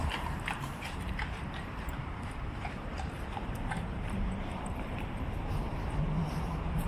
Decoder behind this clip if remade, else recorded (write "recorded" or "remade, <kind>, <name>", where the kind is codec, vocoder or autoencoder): remade, vocoder, BigVGAN v2